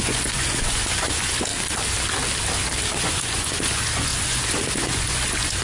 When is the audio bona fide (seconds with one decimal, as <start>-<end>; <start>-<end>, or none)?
1.5-3.0